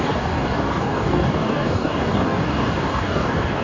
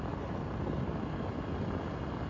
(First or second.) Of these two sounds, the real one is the second